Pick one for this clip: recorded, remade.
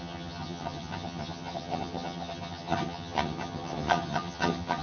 remade